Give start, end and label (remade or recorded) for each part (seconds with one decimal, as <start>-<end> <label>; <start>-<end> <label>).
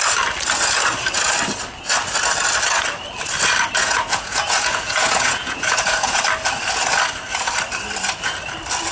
0.0-3.8 recorded; 3.8-6.2 remade; 6.2-8.9 recorded